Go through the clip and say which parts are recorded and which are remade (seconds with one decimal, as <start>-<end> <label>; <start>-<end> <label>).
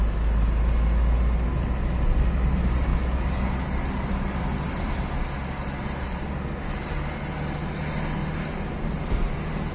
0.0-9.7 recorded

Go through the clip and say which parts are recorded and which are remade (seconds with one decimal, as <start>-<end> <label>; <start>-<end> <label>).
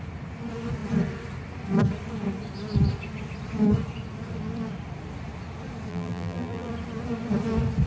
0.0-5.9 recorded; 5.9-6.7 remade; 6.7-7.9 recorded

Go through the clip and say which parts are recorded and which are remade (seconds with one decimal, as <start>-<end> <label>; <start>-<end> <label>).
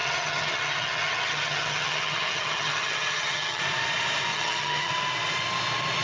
0.0-3.6 remade; 3.6-4.3 recorded; 4.3-4.9 remade; 4.9-6.0 recorded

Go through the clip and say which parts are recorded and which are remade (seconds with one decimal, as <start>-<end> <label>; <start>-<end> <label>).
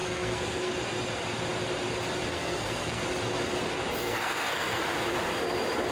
0.0-0.7 remade; 0.7-2.3 recorded; 2.3-3.0 remade; 3.0-4.0 recorded; 4.0-4.8 remade; 4.8-5.9 recorded